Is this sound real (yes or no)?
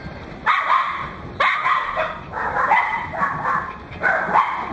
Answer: no